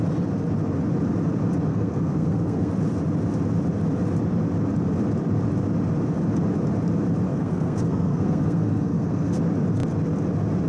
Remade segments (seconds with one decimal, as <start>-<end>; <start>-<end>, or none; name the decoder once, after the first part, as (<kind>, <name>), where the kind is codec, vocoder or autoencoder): 1.7-2.7 (codec, SNAC); 7.3-9.4